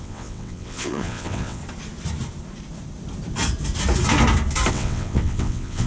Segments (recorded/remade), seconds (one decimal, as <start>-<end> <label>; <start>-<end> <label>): 0.0-1.6 remade; 1.6-4.7 recorded; 4.7-5.9 remade

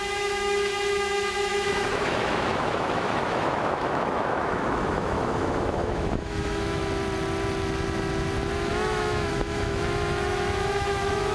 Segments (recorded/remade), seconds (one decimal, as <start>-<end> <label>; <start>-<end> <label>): 0.0-6.8 remade; 6.8-8.7 recorded; 8.7-11.3 remade

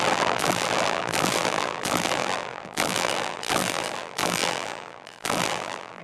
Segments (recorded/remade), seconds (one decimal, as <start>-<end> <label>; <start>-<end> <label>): 0.0-6.0 remade

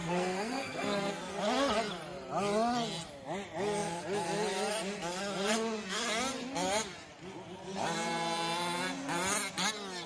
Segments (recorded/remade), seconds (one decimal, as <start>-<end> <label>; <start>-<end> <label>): 0.0-1.1 remade; 1.1-10.1 recorded

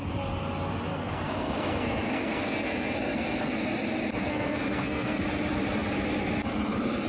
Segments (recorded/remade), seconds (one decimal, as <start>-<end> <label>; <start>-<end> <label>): 0.0-0.9 recorded; 0.9-3.6 remade; 3.6-4.2 recorded; 4.2-5.2 remade; 5.2-7.1 recorded